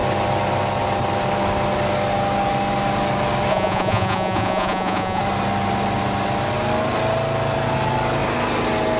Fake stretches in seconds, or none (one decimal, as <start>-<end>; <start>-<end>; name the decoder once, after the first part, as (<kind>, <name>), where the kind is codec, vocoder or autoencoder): 3.5-5.2 (vocoder, Vocos)